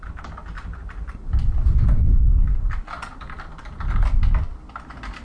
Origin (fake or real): real